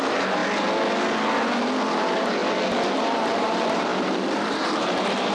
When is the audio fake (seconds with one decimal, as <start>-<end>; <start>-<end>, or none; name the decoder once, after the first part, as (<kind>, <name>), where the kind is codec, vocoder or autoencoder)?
0.0-0.4 (vocoder, BigVGAN v2); 1.9-2.4; 2.9-5.3